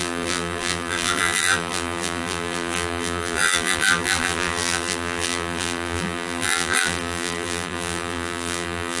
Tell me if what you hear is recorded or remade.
remade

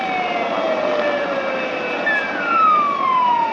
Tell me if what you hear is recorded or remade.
recorded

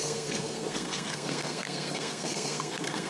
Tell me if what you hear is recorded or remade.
remade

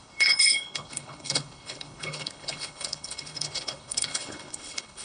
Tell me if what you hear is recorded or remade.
remade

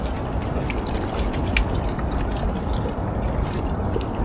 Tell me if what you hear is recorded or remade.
recorded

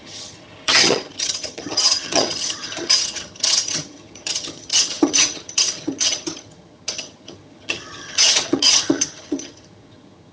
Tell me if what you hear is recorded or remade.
remade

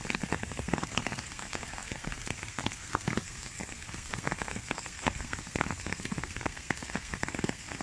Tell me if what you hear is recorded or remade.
remade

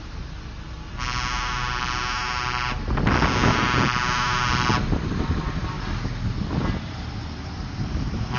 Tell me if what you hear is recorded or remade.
recorded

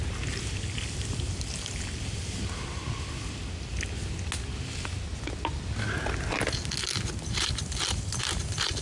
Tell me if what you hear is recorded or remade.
recorded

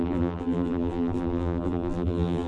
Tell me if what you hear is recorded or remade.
remade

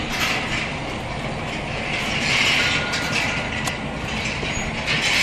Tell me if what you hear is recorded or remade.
recorded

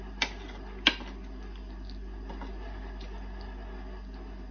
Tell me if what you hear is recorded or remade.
recorded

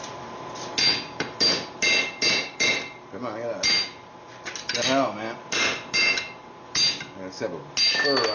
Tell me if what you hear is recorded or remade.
recorded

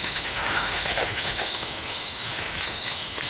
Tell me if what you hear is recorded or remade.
remade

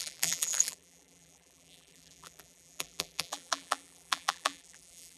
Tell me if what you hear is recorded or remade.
remade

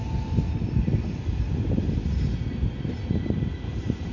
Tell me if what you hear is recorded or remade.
recorded